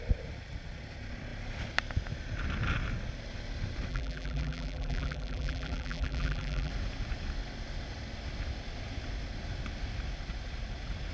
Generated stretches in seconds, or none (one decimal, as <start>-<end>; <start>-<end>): 3.9-6.7